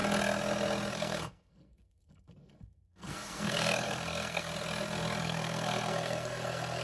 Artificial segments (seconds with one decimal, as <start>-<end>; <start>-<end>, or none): 0.9-4.5; 5.2-6.8